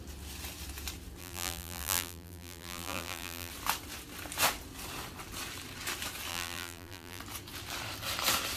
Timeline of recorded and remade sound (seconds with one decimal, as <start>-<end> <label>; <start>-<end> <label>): 0.0-1.2 recorded; 1.2-3.5 remade; 3.5-6.3 recorded; 6.3-7.2 remade; 7.2-8.6 recorded